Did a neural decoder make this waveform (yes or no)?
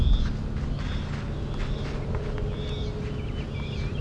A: no